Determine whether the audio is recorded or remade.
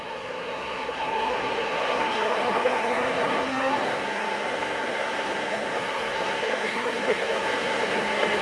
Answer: remade